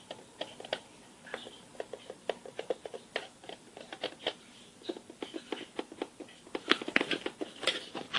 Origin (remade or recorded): remade